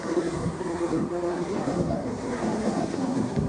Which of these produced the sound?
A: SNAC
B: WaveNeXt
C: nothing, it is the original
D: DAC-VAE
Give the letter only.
A